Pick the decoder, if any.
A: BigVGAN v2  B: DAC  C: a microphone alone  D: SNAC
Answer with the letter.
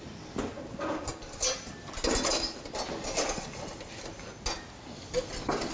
C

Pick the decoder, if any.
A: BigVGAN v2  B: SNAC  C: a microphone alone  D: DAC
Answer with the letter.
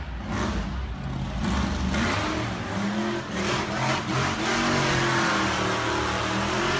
C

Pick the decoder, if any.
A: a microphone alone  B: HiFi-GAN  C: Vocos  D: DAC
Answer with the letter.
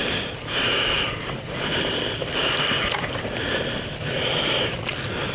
A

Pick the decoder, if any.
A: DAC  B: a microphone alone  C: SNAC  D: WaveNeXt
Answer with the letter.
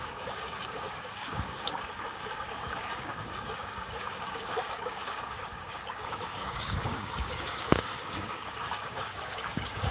A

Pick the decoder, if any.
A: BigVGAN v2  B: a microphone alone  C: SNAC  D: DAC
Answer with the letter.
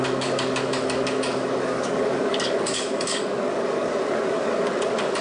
D